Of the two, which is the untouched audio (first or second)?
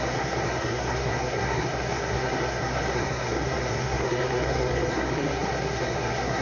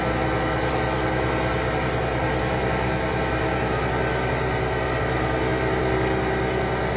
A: second